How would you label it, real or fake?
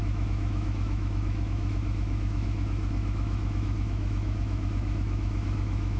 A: fake